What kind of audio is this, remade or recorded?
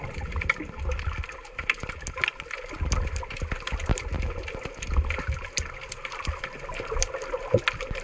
recorded